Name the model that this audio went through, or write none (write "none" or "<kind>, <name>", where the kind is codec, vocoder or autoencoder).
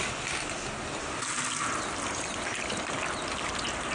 none